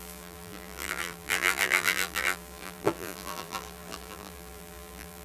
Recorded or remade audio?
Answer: remade